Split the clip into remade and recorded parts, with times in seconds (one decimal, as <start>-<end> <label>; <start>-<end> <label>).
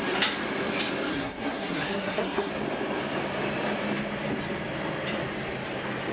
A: 0.0-1.1 recorded; 1.1-2.5 remade; 2.5-6.1 recorded